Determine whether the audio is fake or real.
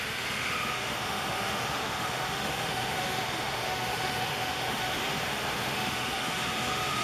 fake